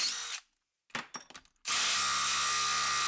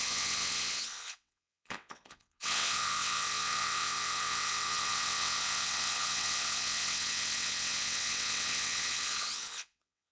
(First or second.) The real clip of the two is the first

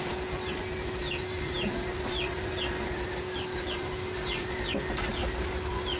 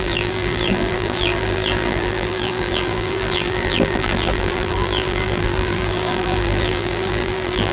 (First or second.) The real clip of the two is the first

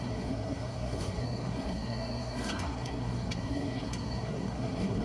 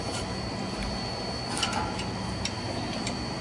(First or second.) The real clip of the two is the second